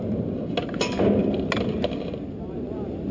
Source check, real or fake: real